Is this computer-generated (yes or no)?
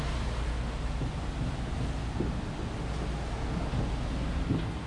no